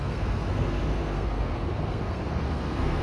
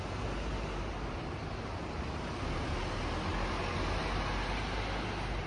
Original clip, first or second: second